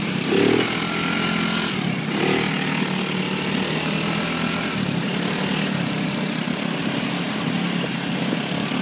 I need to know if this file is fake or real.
real